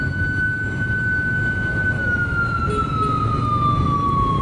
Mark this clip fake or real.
real